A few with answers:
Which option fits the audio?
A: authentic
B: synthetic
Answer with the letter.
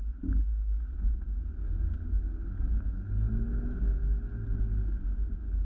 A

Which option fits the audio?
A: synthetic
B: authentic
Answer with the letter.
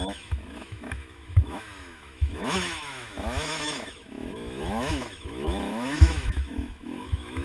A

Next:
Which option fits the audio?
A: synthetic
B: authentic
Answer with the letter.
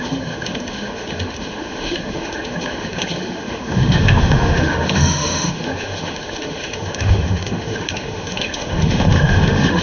A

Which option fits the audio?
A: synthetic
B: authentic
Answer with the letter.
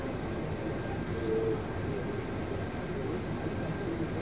B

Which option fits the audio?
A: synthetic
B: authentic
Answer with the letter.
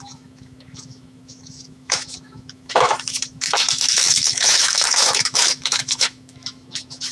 A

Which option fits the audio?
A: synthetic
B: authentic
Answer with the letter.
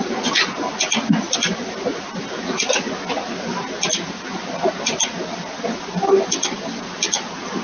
B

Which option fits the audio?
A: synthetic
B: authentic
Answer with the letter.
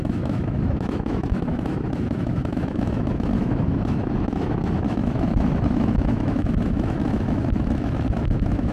A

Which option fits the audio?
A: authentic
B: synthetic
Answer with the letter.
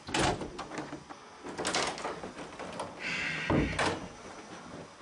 A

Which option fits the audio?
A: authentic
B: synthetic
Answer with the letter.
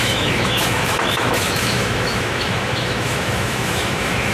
B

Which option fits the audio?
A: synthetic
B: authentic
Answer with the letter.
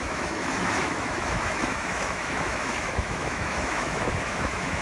A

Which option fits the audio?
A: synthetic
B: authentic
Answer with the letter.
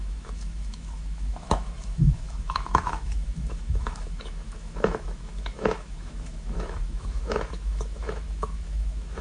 A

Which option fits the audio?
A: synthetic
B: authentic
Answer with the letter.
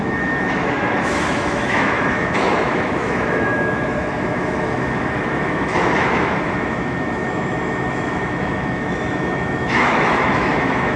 A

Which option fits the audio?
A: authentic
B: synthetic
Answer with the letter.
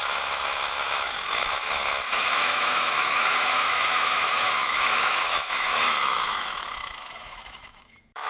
B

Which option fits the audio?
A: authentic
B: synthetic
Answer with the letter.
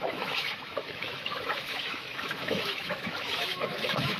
B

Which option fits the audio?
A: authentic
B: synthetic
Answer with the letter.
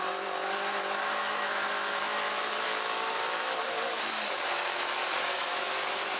B